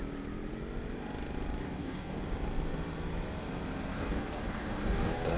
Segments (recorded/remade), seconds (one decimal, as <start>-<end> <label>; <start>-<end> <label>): 0.0-1.6 recorded; 1.6-2.2 remade; 2.2-3.9 recorded; 3.9-5.4 remade

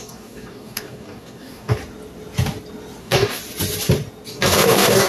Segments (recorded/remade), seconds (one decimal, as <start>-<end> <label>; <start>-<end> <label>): 0.0-1.8 remade; 1.8-3.0 recorded; 3.0-3.4 remade; 3.4-4.3 recorded; 4.3-5.1 remade

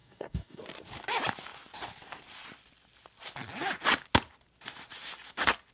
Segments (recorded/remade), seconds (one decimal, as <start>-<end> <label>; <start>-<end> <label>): 0.0-0.6 remade; 0.6-5.7 recorded

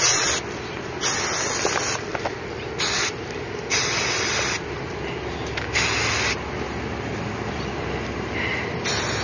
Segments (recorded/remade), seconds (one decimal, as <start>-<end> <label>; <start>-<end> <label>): 0.0-9.2 recorded

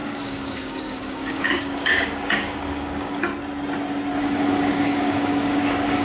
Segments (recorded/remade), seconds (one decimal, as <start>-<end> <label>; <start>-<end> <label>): 0.0-3.3 remade; 3.3-4.2 recorded; 4.2-6.0 remade

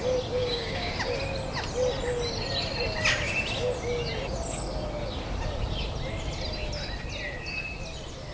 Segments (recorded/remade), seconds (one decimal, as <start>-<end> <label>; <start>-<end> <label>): 0.0-0.4 recorded; 0.4-0.9 remade; 0.9-8.3 recorded